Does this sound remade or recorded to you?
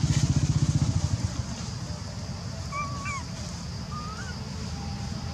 recorded